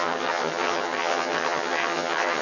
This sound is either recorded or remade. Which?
remade